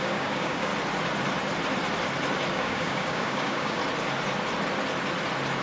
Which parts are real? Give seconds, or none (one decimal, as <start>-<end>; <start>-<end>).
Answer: 0.7-2.5; 3.8-5.6